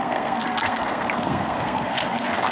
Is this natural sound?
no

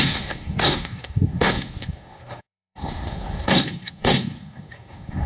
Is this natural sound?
no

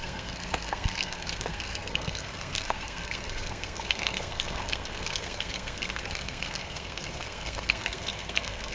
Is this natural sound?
no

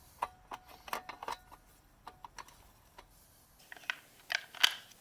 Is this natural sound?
yes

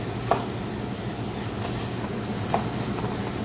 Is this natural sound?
yes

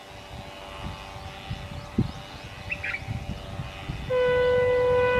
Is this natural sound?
yes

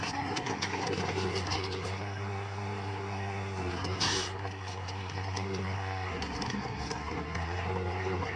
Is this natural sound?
no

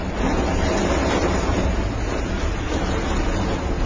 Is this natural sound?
yes